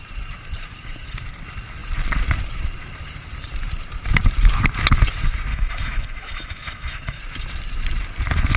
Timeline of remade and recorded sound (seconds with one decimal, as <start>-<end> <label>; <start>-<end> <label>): 0.0-5.5 recorded; 5.5-7.2 remade; 7.2-8.6 recorded